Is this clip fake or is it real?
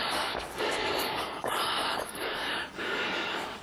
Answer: fake